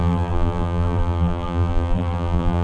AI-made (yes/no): yes